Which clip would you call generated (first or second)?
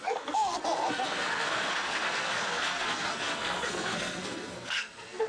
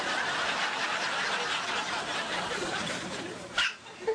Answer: first